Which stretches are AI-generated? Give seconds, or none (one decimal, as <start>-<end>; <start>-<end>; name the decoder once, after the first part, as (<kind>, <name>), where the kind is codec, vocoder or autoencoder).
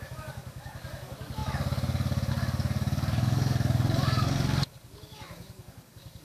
0.0-6.2 (codec, DAC)